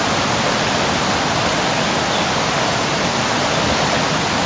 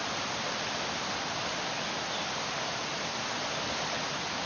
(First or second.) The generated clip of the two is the second